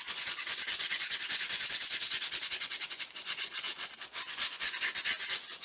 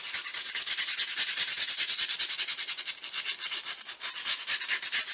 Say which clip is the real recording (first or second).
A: second